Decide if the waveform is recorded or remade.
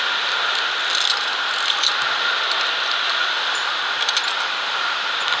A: recorded